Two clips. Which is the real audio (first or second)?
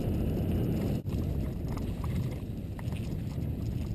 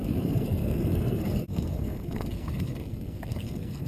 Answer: first